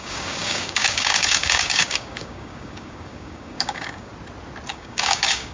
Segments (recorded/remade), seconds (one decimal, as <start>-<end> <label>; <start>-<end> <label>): 0.0-4.1 remade; 4.1-4.7 recorded; 4.7-5.5 remade